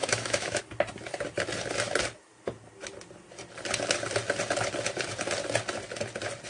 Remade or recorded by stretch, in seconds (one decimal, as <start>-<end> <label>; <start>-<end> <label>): 0.0-0.6 remade; 0.6-6.5 recorded